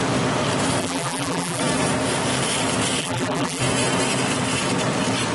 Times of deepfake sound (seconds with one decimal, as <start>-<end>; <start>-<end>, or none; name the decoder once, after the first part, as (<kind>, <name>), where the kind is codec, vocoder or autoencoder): 0.8-1.6 (vocoder, BigVGAN v2); 3.0-3.6